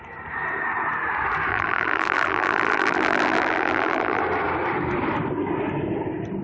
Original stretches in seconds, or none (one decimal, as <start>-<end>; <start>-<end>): 0.0-1.5; 4.2-6.4